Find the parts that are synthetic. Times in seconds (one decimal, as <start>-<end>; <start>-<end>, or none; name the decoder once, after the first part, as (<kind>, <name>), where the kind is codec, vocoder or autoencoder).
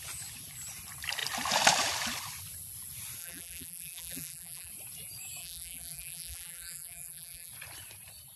3.2-4.7 (vocoder, BigVGAN v2); 5.4-7.5